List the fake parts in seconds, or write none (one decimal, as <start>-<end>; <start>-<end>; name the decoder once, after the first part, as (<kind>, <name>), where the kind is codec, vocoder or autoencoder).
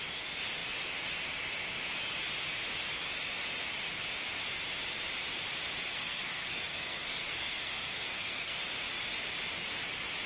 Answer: 5.9-8.6 (codec, SNAC)